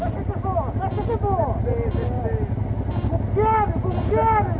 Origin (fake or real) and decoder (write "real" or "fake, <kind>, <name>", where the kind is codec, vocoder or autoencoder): real